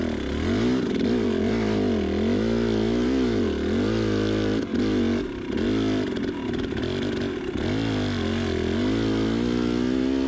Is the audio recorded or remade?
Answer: recorded